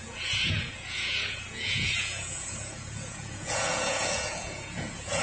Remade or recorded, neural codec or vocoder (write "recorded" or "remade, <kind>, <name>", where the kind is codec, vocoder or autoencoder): remade, vocoder, Vocos